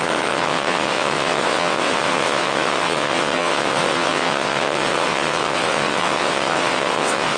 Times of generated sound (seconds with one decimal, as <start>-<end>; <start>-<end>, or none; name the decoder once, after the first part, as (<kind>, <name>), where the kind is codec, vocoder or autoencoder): 0.0-7.4 (vocoder, WaveNeXt)